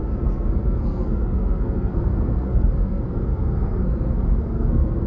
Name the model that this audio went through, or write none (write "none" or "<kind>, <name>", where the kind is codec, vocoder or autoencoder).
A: codec, SNAC